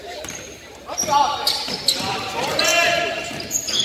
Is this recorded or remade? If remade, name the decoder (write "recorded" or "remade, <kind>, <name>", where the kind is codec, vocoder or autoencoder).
remade, vocoder, BigVGAN v2